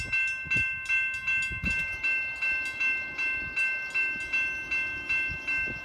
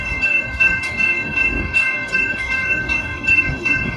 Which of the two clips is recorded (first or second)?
first